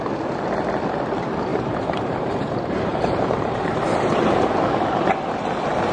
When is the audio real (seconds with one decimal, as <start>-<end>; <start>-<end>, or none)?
0.0-1.5; 4.5-5.9

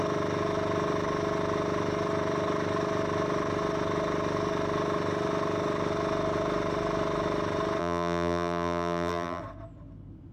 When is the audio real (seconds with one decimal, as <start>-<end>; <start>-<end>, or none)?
0.0-7.8; 9.4-10.3

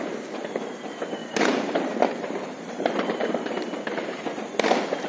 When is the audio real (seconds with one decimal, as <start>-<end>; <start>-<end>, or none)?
0.0-1.2; 4.3-5.1

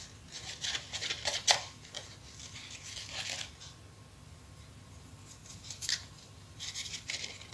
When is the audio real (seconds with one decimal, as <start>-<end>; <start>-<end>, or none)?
0.0-5.4; 7.1-7.5

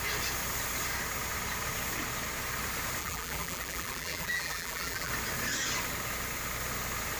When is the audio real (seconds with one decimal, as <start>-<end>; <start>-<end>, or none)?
0.0-3.0; 5.1-7.2